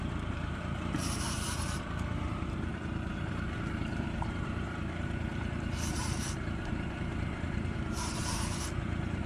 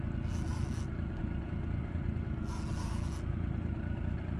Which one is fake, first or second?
first